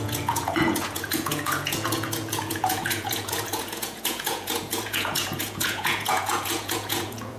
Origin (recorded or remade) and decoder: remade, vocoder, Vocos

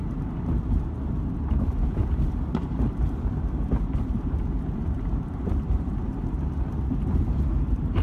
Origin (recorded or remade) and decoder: remade, vocoder, BigVGAN v2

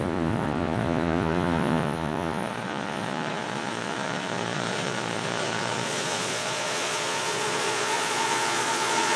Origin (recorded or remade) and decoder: remade, vocoder, Vocos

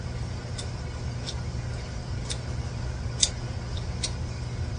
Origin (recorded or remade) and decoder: recorded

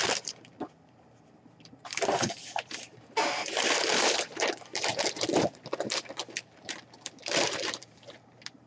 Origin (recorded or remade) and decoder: remade, vocoder, BigVGAN v2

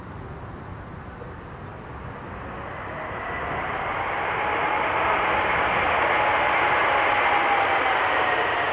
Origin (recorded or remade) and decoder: recorded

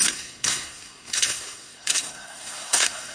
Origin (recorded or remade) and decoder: remade, codec, SNAC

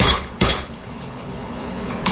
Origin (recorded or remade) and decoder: remade, codec, HILCodec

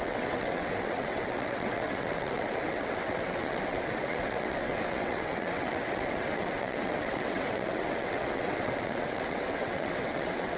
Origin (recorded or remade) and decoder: remade, vocoder, WaveNeXt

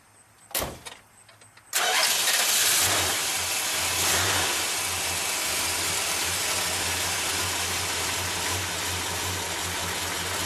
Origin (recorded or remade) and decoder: recorded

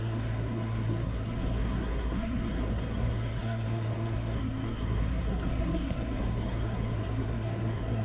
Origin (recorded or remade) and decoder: remade, codec, SNAC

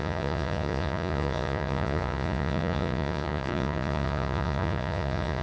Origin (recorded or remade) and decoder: remade, vocoder, Vocos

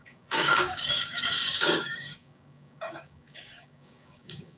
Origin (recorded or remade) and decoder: remade, codec, DAC